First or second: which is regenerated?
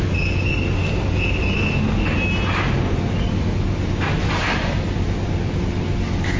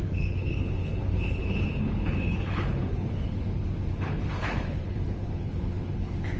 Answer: second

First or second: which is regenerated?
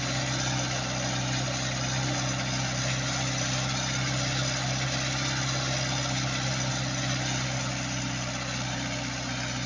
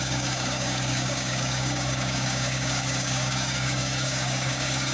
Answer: second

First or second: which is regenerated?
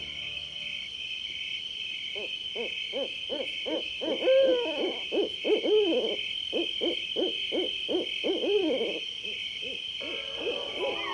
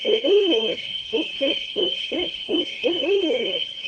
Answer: second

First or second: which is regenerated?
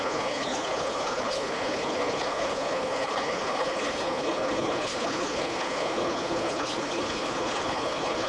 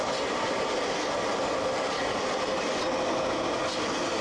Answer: first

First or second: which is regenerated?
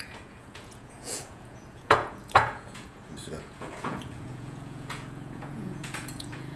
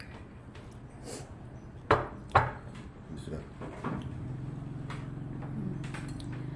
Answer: first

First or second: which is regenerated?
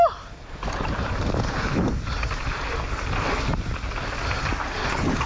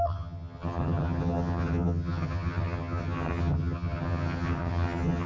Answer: second